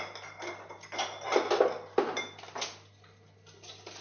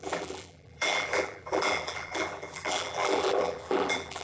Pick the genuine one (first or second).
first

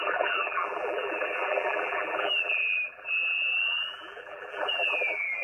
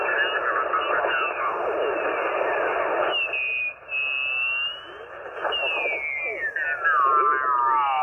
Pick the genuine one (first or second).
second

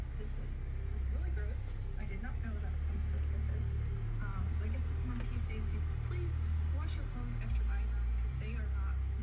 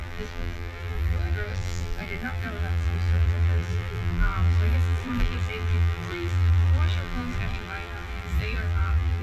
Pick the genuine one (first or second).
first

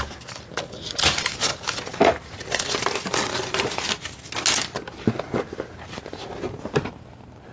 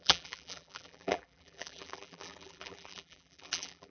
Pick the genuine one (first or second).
first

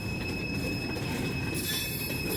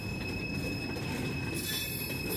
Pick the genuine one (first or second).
second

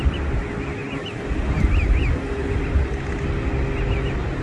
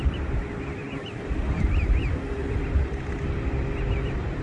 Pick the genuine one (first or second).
first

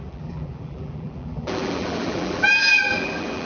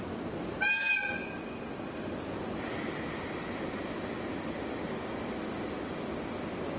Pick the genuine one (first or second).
second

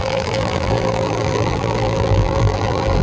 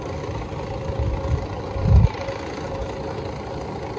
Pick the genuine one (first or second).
second